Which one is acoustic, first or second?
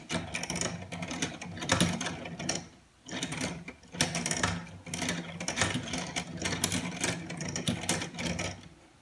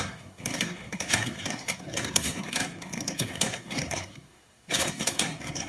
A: first